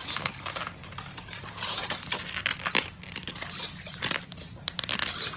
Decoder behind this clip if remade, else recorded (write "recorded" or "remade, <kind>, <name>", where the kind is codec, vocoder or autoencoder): recorded